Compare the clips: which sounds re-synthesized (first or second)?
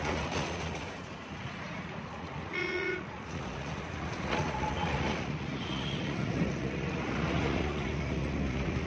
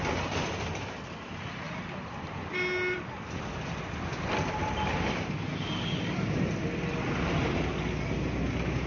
first